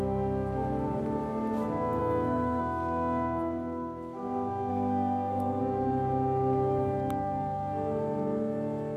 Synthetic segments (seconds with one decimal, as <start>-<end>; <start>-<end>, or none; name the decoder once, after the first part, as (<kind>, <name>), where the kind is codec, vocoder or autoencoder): 2.0-2.6 (codec, SNAC); 4.7-5.6